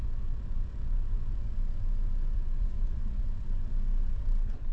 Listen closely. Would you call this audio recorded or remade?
remade